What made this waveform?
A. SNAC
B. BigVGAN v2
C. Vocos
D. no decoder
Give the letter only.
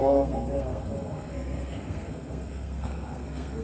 A